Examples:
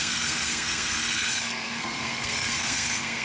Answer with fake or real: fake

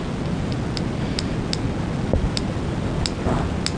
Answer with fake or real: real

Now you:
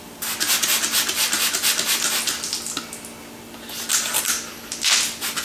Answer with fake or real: real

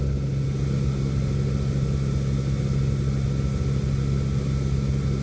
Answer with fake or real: real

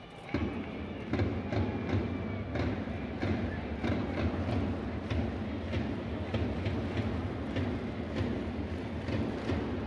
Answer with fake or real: real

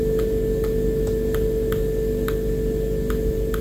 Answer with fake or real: real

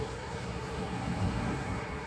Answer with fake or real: fake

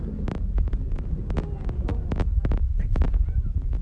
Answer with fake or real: real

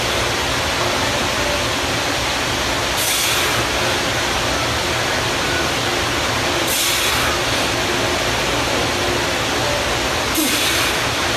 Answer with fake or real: real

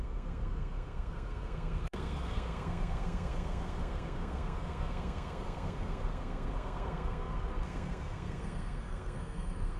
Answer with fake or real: fake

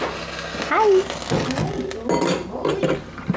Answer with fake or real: real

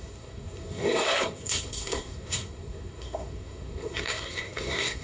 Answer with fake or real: fake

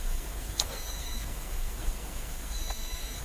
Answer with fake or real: fake